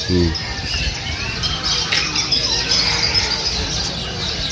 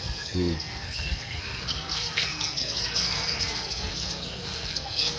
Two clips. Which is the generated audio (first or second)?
second